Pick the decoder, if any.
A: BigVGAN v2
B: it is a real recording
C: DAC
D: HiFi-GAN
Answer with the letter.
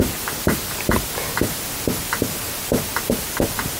B